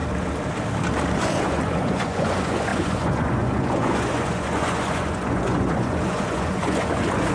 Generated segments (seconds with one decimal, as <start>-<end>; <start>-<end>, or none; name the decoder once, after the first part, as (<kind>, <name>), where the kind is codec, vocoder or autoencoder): 1.2-7.3 (vocoder, Vocos)